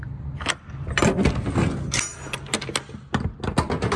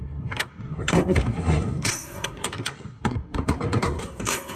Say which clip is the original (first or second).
first